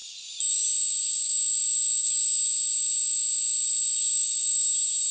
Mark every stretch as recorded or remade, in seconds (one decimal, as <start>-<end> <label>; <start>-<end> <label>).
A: 0.0-5.1 recorded